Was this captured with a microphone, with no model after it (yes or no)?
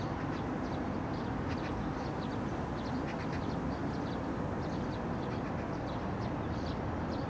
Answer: yes